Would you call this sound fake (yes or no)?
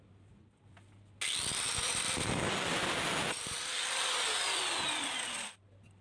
no